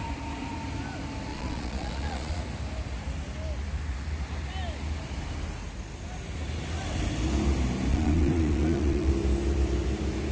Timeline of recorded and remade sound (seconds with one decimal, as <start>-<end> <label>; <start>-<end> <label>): 0.0-1.3 recorded; 1.3-2.4 remade; 2.4-7.9 recorded; 7.9-9.1 remade; 9.1-10.3 recorded